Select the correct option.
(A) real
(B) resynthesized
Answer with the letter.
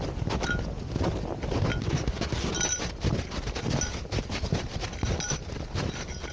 A